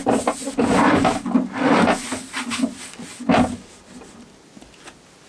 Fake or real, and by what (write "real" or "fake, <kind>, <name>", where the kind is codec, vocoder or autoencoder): real